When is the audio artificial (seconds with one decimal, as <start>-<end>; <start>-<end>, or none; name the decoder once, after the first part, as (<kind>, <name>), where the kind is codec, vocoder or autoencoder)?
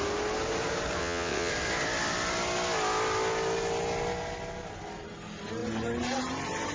1.0-1.5 (vocoder, WaveNeXt)